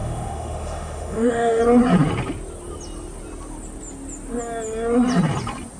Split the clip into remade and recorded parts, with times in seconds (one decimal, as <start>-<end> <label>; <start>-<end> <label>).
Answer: 0.0-1.6 remade; 1.6-5.8 recorded